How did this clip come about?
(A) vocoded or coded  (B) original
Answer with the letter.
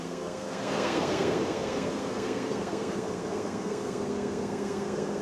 A